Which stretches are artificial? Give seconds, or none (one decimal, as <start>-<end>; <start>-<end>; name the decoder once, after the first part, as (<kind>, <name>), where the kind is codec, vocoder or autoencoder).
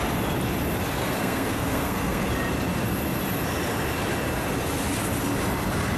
1.0-2.3 (codec, SNAC)